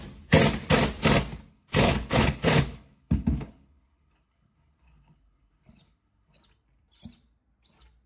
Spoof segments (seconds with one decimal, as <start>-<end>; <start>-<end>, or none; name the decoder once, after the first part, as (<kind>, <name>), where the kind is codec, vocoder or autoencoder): 1.5-6.4 (codec, HILCodec)